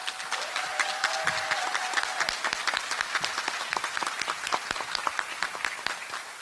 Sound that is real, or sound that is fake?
real